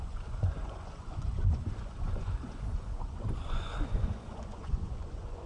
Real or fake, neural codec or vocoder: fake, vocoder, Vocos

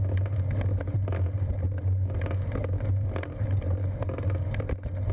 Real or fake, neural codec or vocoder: real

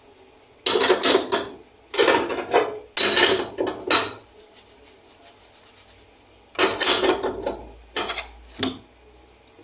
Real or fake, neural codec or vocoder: real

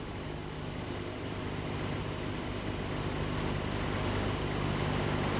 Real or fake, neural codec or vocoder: real